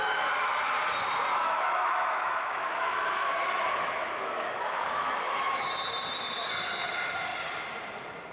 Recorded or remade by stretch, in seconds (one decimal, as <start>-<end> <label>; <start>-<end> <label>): 0.0-1.3 recorded; 1.3-5.7 remade; 5.7-8.3 recorded